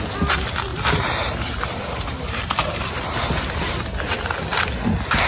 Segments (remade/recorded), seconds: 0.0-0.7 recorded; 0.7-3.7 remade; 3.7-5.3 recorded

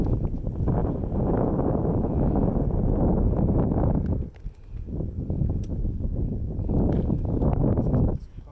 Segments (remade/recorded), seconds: 0.0-7.5 recorded; 7.5-8.5 remade

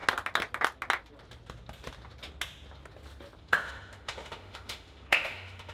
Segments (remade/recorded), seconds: 0.0-3.4 recorded; 3.4-5.7 remade

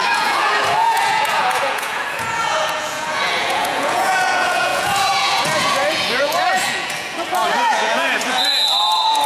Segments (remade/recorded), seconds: 0.0-9.3 remade